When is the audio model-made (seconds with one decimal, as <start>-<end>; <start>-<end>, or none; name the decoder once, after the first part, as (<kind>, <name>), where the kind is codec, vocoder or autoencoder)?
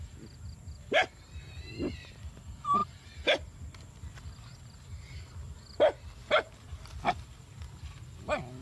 none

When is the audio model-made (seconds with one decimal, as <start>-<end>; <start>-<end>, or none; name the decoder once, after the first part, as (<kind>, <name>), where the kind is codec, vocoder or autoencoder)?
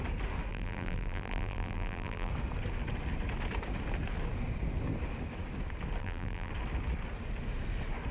0.5-2.3 (vocoder, BigVGAN v2); 6.0-6.5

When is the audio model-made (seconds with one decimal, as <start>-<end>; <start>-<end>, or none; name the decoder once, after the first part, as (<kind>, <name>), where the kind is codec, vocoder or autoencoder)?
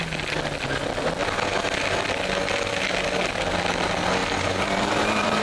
4.2-5.4 (vocoder, BigVGAN v2)